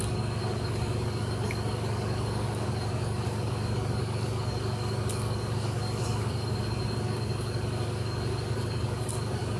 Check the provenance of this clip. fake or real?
fake